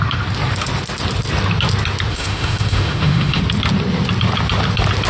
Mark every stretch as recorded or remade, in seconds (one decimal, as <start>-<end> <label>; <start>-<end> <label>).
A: 0.0-2.1 recorded; 2.1-3.4 remade; 3.4-5.1 recorded